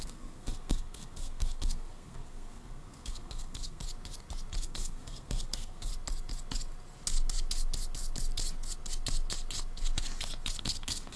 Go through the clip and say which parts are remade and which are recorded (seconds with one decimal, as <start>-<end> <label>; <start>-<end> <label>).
0.0-3.8 remade; 3.8-4.6 recorded; 4.6-5.9 remade; 5.9-10.6 recorded; 10.6-11.2 remade